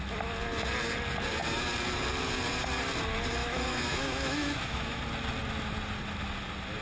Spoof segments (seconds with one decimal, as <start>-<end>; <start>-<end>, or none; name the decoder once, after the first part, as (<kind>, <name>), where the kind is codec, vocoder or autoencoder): 3.4-5.0 (autoencoder, DAC-VAE)